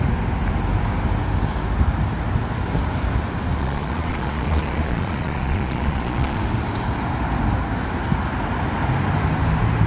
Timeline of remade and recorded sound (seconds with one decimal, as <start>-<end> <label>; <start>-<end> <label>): 0.0-3.6 recorded; 3.6-6.4 remade; 6.4-9.9 recorded